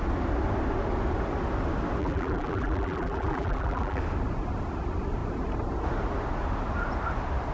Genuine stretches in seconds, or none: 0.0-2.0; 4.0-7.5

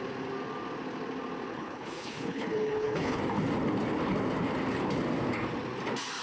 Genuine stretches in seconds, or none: 0.0-1.5; 3.2-6.2